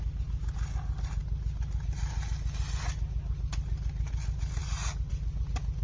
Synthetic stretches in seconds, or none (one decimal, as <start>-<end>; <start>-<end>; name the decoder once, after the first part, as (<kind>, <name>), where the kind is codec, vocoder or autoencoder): none